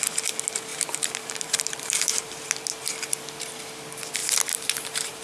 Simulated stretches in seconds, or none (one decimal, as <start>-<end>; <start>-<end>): 0.7-2.5; 4.2-5.2